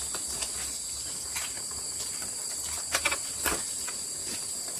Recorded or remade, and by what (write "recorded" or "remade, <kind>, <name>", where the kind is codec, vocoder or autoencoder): remade, vocoder, BigVGAN v2